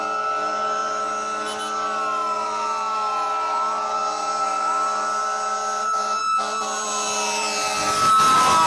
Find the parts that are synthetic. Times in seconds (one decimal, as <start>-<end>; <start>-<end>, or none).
none